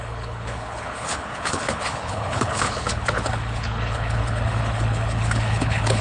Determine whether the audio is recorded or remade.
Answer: remade